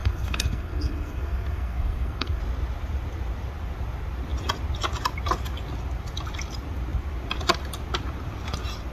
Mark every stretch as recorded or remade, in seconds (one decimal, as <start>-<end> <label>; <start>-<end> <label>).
0.0-2.4 remade; 2.4-8.9 recorded